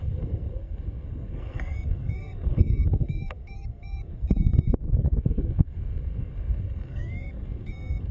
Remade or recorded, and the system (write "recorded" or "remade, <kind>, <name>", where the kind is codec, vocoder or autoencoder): remade, codec, SNAC